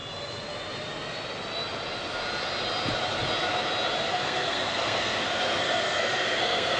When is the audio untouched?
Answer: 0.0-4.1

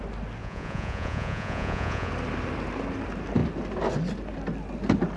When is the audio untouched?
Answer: 0.0-0.4; 2.1-5.2

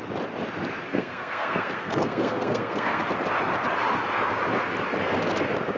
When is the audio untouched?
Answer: 0.0-0.9; 3.0-5.8